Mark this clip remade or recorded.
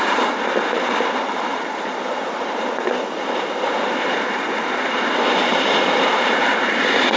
remade